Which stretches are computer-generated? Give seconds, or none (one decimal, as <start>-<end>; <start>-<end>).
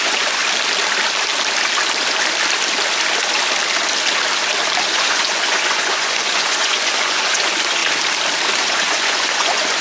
0.0-0.4; 4.9-7.8; 8.6-9.8